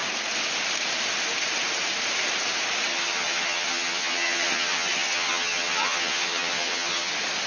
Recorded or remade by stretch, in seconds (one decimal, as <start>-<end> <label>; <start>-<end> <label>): 0.0-2.9 recorded; 2.9-7.1 remade; 7.1-7.5 recorded